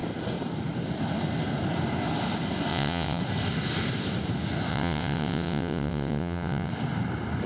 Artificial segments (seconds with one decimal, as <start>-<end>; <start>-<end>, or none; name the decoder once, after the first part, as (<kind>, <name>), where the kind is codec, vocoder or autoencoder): 2.7-3.2 (vocoder, WaveNeXt); 4.7-6.7